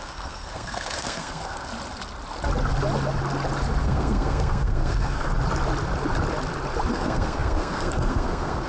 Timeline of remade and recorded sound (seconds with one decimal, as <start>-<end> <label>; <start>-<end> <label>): 0.0-1.7 remade; 1.7-3.8 recorded; 3.8-5.3 remade; 5.3-6.9 recorded; 6.9-8.7 remade